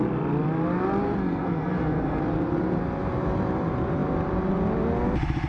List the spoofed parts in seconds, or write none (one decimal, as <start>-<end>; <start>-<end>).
1.2-2.2